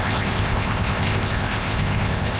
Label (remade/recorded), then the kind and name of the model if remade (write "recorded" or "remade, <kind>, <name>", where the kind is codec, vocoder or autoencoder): remade, codec, ZipCodec